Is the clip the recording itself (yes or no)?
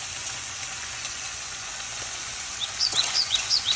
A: no